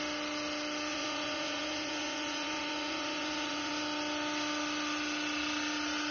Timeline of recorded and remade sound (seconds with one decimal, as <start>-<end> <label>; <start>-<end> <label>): 0.0-0.9 recorded; 0.9-3.8 remade; 3.8-6.1 recorded